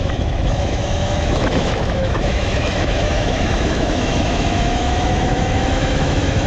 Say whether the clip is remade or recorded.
remade